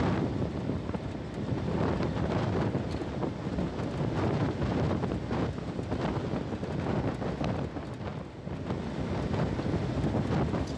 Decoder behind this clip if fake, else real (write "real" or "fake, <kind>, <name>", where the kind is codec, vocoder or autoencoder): real